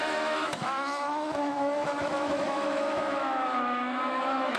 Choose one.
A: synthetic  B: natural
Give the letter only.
A